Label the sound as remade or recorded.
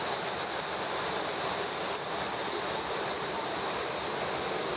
recorded